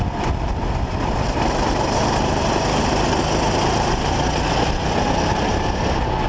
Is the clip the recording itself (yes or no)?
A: yes